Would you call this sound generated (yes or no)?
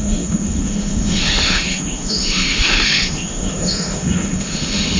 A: yes